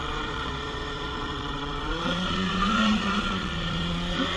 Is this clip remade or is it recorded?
remade